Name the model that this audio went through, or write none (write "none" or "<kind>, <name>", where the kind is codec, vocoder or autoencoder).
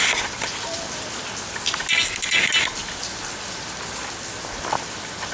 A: none